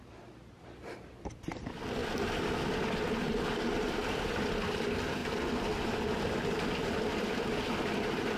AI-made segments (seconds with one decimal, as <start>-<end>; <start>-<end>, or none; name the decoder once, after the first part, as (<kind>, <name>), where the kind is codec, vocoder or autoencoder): none